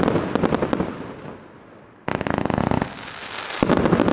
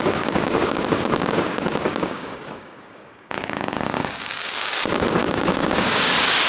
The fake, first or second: second